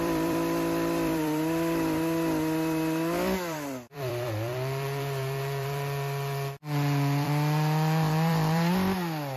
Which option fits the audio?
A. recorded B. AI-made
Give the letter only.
B